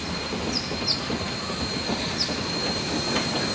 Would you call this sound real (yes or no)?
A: yes